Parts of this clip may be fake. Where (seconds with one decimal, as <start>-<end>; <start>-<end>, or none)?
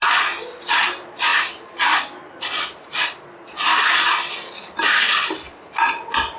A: none